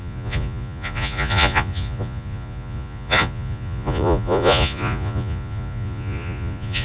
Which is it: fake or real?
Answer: fake